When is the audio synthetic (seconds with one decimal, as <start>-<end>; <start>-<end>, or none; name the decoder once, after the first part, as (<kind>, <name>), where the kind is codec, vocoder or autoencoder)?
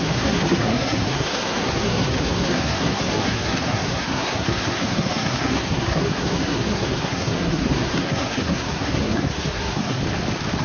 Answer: 0.0-10.0 (codec, SNAC)